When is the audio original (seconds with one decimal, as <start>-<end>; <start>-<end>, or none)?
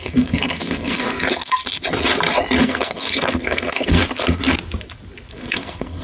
1.6-2.6; 4.0-5.3